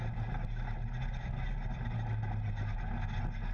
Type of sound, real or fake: real